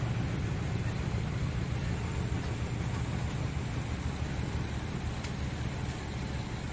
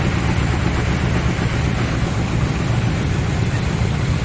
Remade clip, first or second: second